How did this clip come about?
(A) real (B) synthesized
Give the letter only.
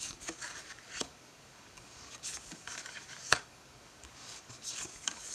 B